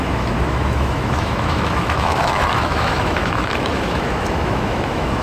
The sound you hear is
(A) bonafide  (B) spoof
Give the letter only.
B